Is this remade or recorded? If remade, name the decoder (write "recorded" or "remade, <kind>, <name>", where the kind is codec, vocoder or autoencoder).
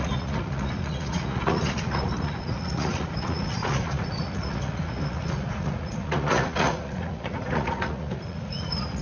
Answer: remade, vocoder, Vocos